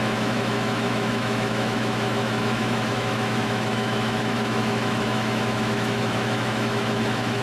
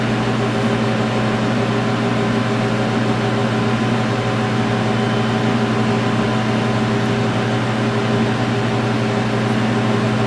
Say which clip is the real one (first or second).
second